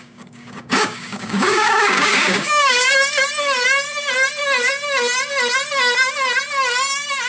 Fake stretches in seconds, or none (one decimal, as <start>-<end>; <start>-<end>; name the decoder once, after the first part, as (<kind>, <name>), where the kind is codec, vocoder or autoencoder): 0.0-2.9 (codec, DAC)